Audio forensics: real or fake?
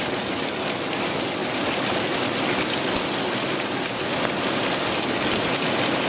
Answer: real